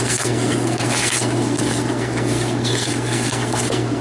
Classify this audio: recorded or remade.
remade